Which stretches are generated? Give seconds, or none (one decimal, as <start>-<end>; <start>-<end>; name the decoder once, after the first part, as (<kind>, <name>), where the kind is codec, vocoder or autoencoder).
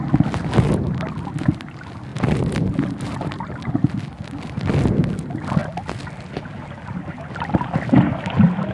none